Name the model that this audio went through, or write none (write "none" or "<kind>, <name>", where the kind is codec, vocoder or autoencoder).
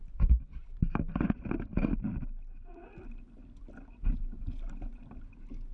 none